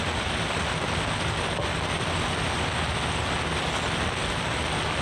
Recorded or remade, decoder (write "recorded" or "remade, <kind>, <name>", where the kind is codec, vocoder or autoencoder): recorded